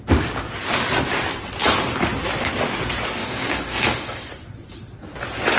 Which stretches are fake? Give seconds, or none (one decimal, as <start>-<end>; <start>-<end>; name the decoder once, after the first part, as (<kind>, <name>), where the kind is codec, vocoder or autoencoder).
3.2-4.3 (codec, DAC)